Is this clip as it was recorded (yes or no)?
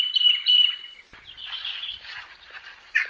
yes